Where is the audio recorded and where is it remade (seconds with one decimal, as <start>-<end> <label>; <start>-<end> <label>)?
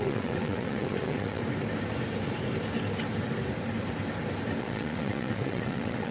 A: 0.0-1.4 remade; 1.4-4.6 recorded; 4.6-6.1 remade